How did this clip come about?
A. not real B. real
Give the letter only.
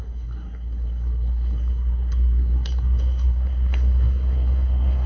A